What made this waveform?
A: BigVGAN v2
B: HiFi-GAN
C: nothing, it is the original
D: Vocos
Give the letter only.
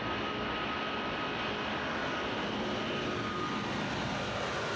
C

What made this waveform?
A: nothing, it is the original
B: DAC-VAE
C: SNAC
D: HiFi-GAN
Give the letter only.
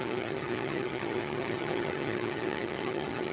D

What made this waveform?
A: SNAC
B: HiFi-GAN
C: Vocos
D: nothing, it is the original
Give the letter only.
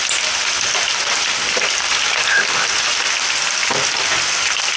D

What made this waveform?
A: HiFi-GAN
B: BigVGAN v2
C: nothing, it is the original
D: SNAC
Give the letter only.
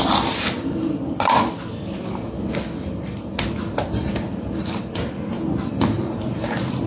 C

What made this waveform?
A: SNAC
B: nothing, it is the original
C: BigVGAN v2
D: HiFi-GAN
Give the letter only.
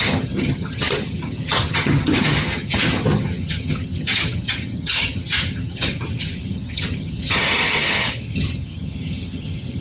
D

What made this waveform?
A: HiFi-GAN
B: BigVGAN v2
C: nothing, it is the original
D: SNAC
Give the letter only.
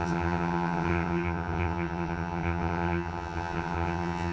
A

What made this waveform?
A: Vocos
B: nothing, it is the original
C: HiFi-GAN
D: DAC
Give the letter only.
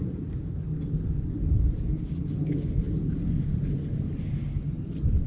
B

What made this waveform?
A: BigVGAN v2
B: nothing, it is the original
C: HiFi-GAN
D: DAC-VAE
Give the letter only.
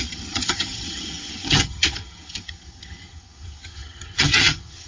C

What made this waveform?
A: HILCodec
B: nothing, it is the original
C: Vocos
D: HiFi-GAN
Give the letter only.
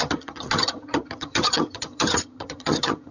D